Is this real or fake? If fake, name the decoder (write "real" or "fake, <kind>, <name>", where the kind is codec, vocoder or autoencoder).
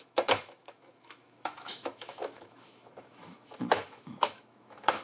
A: fake, autoencoder, DAC-VAE